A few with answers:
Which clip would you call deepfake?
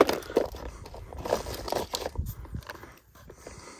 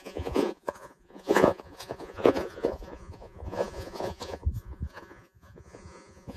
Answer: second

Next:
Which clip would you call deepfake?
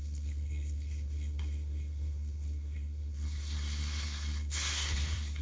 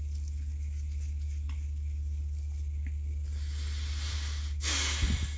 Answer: first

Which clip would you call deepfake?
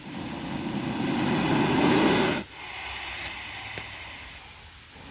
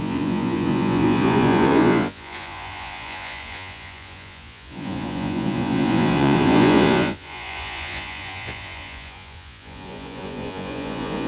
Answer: second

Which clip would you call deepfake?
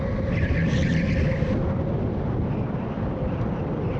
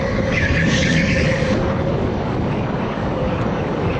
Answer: second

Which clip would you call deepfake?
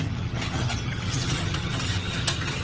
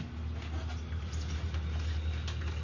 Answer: first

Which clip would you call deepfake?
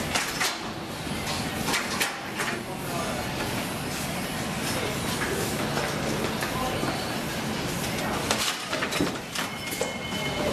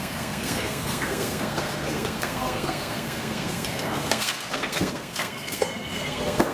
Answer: second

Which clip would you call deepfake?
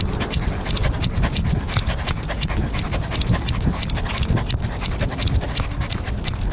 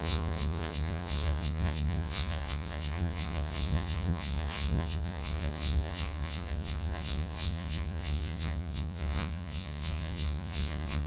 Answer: second